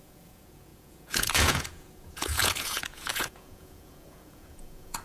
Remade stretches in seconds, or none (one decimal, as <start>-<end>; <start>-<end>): 0.0-5.0